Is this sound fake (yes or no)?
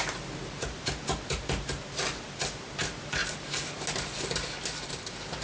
no